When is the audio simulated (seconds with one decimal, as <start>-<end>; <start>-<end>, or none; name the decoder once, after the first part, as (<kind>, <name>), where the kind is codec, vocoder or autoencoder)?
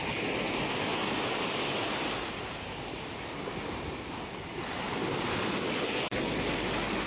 none